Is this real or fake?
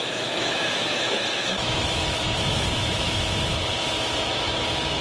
fake